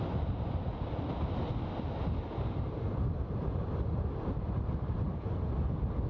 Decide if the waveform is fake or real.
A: real